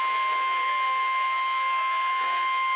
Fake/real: fake